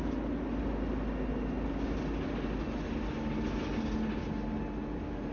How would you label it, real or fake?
real